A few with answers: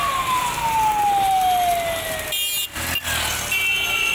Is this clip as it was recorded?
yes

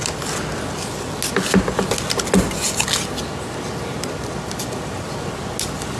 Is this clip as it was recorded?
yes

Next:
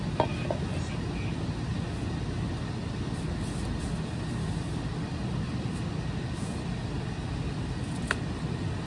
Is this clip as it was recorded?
yes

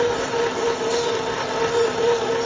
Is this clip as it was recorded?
yes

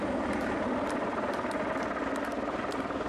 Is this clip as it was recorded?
yes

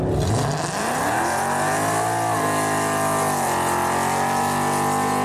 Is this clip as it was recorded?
yes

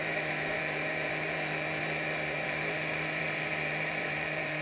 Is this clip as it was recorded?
no